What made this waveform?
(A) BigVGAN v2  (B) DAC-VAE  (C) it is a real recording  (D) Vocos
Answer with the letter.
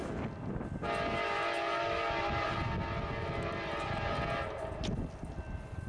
C